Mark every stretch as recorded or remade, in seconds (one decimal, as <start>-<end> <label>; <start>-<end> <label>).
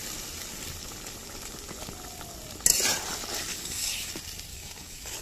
0.0-3.5 recorded; 3.5-4.1 remade; 4.1-4.5 recorded; 4.5-5.2 remade